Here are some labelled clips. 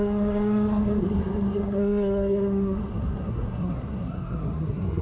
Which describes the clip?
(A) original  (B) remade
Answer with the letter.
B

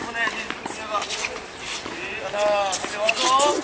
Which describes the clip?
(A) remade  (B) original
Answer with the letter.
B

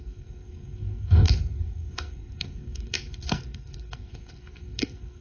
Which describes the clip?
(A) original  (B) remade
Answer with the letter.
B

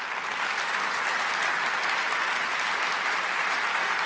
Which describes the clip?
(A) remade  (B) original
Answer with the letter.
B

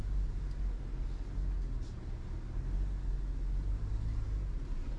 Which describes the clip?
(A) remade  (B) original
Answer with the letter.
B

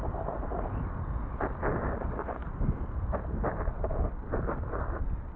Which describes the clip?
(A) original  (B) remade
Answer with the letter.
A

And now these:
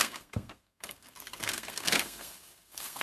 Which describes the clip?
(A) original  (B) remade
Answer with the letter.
B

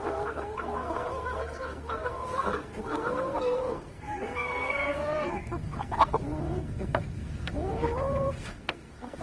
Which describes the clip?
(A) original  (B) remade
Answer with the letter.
B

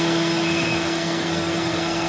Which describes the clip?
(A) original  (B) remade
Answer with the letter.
B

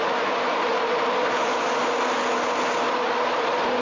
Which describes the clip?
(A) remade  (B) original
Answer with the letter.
B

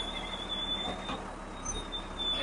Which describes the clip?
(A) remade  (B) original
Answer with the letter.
B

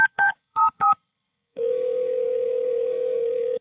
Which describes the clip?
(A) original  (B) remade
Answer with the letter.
B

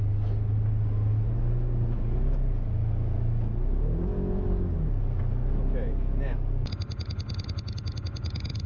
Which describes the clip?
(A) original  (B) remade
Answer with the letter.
A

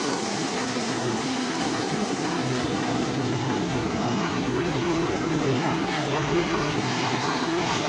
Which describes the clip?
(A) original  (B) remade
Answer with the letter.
B